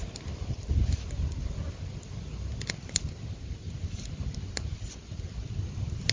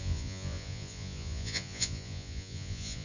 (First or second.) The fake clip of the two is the second